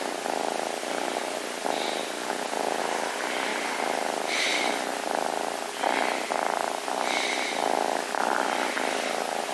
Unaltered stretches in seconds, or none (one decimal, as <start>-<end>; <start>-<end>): 0.0-2.2; 2.8-9.5